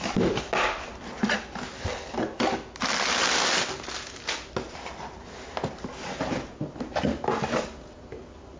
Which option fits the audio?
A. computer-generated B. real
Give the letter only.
B